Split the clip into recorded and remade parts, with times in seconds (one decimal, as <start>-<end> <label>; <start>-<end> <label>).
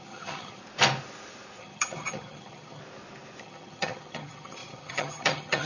0.0-0.6 remade; 0.6-1.6 recorded; 1.6-2.8 remade; 2.8-3.4 recorded; 3.4-5.7 remade